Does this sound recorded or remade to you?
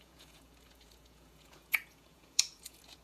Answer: remade